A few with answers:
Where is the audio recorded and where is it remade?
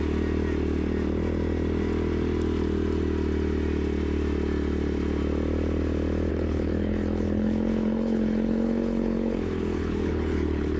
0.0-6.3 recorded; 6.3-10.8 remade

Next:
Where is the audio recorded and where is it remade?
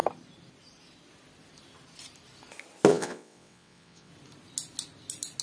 0.0-2.9 recorded; 2.9-4.1 remade; 4.1-5.4 recorded